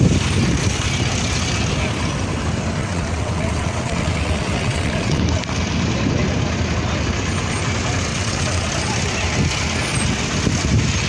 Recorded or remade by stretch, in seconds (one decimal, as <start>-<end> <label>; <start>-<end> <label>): 0.0-2.8 recorded; 2.8-5.2 remade; 5.2-8.1 recorded; 8.1-8.7 remade; 8.7-11.1 recorded